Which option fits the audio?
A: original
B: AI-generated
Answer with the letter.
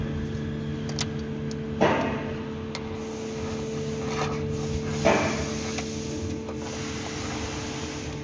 A